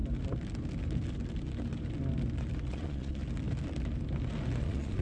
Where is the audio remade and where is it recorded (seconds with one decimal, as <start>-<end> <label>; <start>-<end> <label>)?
0.0-2.7 recorded; 2.7-3.2 remade; 3.2-4.6 recorded; 4.6-5.0 remade